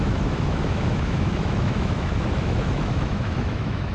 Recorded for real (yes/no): no